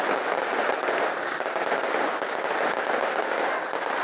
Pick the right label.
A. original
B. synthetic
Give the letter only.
A